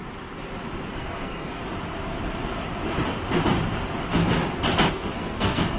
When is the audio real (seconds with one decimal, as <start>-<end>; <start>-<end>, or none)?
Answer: 0.0-0.9; 1.6-4.9